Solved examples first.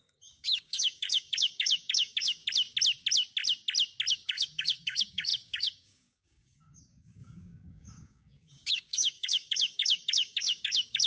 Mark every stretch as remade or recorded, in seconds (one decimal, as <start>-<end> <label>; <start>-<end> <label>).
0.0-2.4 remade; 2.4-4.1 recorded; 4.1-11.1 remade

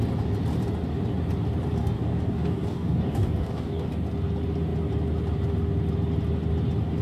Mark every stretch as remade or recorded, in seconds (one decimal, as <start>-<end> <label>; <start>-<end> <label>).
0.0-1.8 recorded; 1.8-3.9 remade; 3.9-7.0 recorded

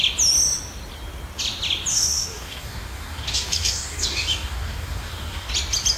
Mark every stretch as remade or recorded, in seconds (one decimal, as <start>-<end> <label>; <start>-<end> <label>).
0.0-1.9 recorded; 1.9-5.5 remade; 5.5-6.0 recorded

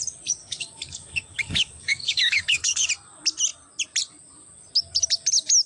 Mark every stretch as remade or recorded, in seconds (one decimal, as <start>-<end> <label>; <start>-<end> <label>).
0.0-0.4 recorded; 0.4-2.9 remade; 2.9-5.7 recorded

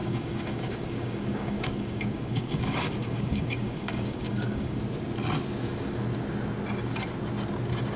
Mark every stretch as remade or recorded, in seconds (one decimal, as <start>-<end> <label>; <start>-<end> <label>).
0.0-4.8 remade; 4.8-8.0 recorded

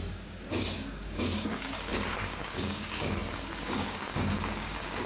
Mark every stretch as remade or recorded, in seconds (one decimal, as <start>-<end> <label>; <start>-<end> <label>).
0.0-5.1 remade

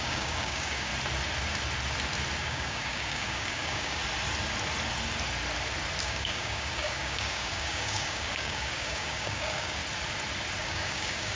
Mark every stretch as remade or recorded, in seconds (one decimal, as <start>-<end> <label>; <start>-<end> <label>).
0.0-0.9 remade; 0.9-2.4 recorded; 2.4-4.0 remade; 4.0-6.0 recorded; 6.0-9.8 remade; 9.8-10.6 recorded; 10.6-11.4 remade